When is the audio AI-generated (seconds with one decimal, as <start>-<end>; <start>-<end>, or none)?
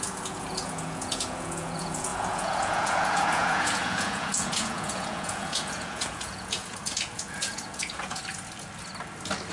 0.0-8.2